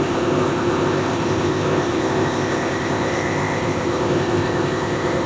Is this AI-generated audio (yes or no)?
yes